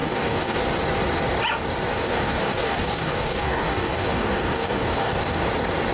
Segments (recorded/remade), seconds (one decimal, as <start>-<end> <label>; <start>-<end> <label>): 0.0-0.6 remade; 0.6-1.9 recorded; 1.9-5.4 remade; 5.4-5.9 recorded